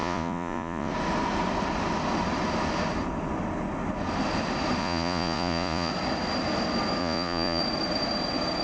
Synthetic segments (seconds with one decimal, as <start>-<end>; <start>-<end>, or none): 0.0-0.9; 4.8-5.9; 7.0-7.6

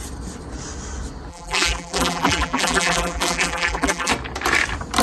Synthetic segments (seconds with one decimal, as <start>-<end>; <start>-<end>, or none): 1.3-4.1

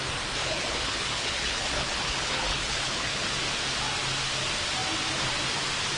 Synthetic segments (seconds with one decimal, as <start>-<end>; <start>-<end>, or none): 0.4-3.3

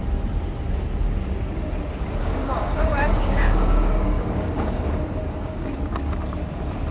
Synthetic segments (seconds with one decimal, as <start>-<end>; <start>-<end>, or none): 2.2-4.8; 5.2-5.7